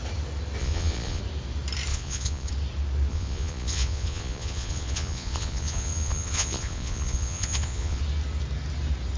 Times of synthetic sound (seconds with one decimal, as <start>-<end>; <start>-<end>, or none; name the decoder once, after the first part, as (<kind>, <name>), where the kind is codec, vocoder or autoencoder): 0.6-1.2 (vocoder, Vocos); 1.9-2.5; 3.1-8.0